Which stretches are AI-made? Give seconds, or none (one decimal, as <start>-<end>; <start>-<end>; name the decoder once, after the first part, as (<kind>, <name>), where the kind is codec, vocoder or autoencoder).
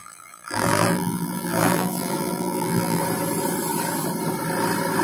0.0-3.0 (vocoder, BigVGAN v2)